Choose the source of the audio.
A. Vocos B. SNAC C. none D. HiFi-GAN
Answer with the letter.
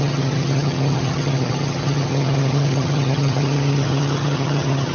D